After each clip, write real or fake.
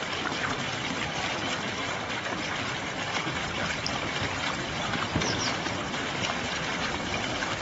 fake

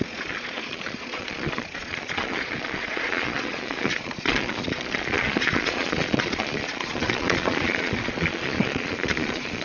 fake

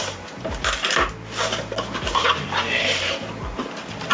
real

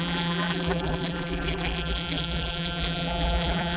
fake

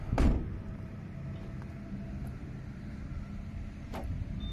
real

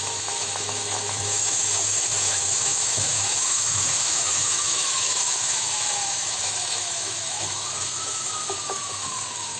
fake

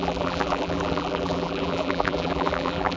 fake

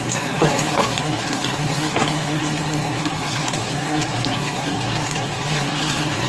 fake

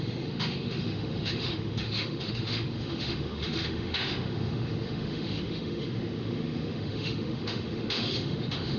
fake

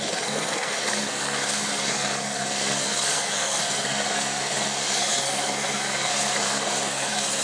fake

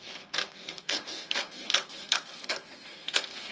fake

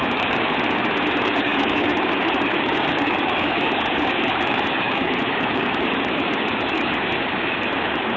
fake